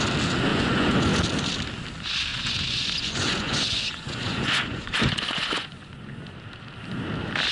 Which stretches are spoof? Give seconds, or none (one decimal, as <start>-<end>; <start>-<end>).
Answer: 0.5-1.1; 2.3-6.3